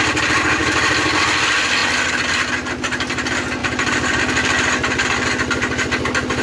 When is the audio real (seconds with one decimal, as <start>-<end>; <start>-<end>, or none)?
0.0-0.6; 1.2-3.6; 4.2-6.4